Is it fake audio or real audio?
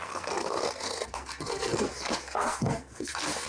fake